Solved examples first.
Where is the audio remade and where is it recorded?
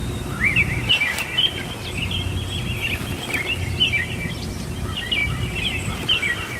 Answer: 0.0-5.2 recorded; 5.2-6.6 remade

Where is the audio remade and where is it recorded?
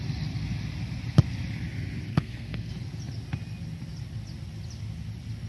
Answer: 0.0-2.1 recorded; 2.1-2.7 remade; 2.7-5.5 recorded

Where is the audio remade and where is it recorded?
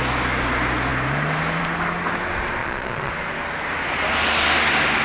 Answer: 0.0-2.6 recorded; 2.6-3.1 remade; 3.1-5.0 recorded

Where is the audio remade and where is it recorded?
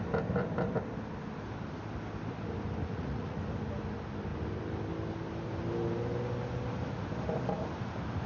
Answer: 0.0-2.8 recorded; 2.8-3.4 remade; 3.4-8.3 recorded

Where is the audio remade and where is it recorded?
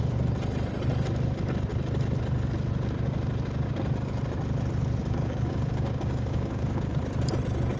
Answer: 0.0-5.0 recorded; 5.0-7.0 remade; 7.0-7.8 recorded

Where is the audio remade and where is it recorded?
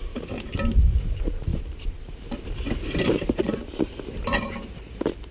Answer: 0.0-5.3 remade